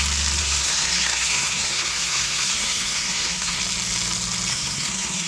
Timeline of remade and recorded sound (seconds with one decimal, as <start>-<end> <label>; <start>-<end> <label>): 0.0-0.4 recorded; 0.4-3.6 remade; 3.6-4.5 recorded; 4.5-5.3 remade